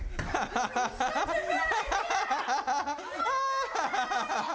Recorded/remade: recorded